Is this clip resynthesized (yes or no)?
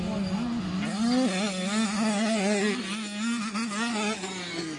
no